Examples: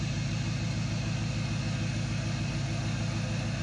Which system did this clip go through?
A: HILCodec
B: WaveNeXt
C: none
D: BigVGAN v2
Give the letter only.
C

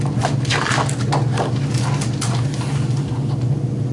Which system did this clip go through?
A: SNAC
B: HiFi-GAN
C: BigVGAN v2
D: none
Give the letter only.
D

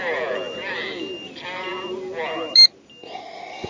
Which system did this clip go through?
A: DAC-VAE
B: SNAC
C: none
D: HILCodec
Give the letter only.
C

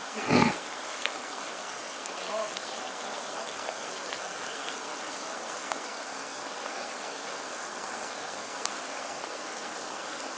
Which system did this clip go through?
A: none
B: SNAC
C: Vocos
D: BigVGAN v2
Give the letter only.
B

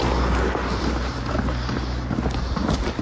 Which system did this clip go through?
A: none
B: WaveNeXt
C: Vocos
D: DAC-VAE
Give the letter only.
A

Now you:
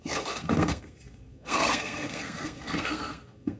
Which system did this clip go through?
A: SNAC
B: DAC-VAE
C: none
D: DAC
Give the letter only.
A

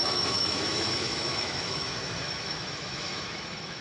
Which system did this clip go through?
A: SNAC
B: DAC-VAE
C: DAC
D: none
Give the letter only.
B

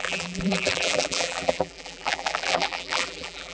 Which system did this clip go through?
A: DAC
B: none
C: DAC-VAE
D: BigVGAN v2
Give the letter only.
D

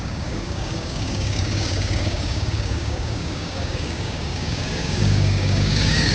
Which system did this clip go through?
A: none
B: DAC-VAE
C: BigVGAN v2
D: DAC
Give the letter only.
D